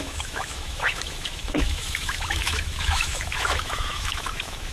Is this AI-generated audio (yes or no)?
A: yes